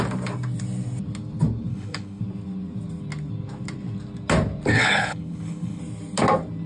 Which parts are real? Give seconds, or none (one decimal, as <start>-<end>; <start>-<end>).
0.0-1.7; 2.2-4.7; 5.8-6.7